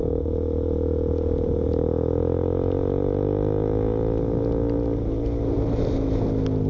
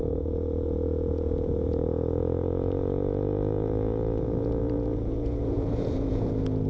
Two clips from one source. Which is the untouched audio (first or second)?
first